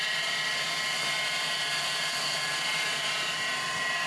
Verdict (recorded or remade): recorded